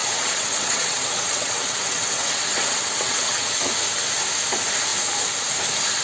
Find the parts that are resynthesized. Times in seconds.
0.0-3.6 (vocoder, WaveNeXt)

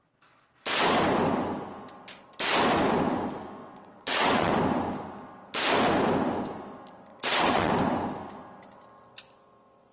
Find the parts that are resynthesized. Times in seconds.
3.6-4.5 (vocoder, WaveNeXt); 7.1-7.7

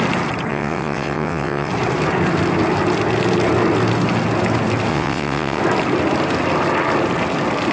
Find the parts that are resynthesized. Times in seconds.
0.5-1.7 (vocoder, WaveNeXt); 4.9-5.6

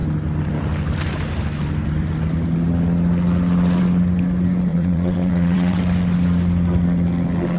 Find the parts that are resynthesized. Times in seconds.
4.7-5.8 (vocoder, WaveNeXt)

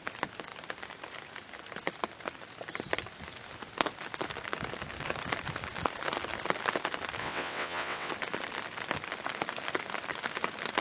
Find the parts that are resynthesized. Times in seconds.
7.2-8.1 (vocoder, WaveNeXt)